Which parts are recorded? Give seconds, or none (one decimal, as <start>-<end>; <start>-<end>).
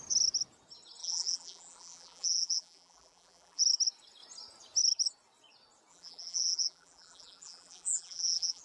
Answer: 0.0-1.0; 3.6-5.9